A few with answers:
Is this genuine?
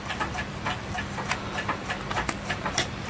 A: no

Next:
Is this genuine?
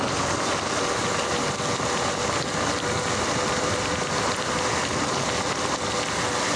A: yes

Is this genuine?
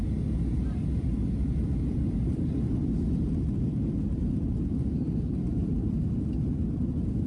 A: no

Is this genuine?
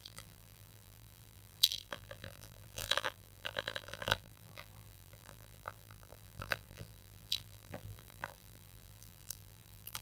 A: no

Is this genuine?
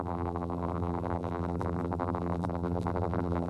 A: no